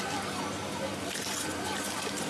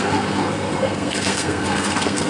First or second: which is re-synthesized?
second